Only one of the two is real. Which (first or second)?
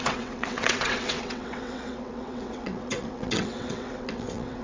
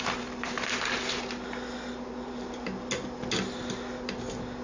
second